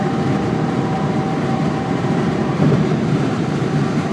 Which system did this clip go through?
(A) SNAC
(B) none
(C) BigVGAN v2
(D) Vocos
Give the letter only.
C